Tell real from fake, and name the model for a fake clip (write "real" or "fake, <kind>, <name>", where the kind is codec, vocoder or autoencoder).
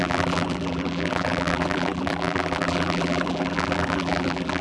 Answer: fake, vocoder, BigVGAN v2